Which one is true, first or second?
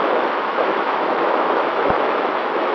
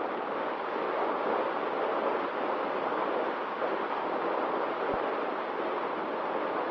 second